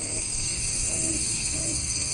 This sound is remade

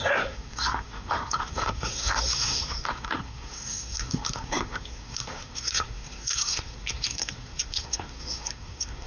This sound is remade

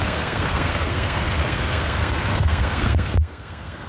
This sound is remade